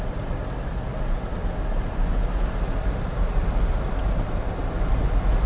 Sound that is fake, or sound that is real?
real